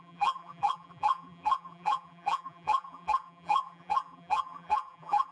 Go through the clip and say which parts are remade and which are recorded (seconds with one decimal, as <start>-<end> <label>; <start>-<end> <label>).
0.0-5.3 remade